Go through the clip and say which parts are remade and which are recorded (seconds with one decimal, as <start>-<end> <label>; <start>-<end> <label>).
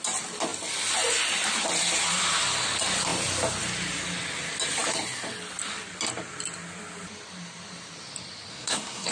0.0-8.5 recorded; 8.5-9.1 remade